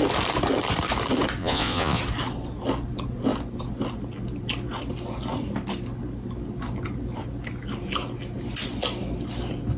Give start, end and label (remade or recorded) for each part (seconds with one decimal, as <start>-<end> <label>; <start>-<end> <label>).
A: 0.0-1.4 recorded; 1.4-2.0 remade; 2.0-9.8 recorded